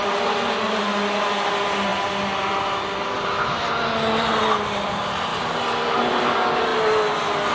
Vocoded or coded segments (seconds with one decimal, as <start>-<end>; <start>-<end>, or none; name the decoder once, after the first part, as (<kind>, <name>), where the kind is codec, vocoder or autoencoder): none

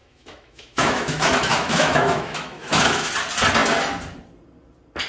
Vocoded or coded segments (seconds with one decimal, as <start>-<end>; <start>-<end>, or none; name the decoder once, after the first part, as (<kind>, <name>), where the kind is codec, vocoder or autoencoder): 0.0-3.1 (autoencoder, DAC-VAE)

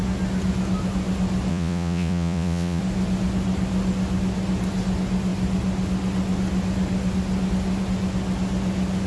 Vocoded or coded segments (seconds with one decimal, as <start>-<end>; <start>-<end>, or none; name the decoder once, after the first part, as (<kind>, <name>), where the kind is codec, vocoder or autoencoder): 1.5-2.8 (vocoder, Vocos)

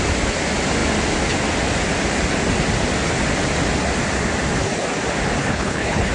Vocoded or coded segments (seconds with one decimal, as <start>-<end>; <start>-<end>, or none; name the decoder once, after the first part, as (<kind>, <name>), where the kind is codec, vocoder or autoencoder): 5.4-6.1 (codec, HILCodec)